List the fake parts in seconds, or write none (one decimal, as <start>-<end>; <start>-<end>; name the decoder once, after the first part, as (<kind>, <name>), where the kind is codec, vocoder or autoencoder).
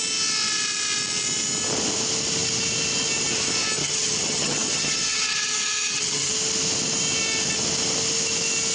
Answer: 3.8-6.3 (vocoder, HiFi-GAN)